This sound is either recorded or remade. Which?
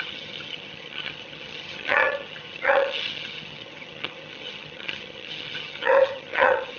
remade